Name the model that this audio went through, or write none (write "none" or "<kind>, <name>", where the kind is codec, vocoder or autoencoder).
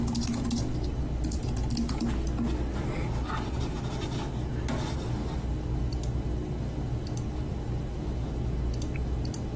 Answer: none